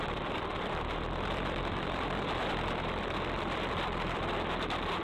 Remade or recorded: remade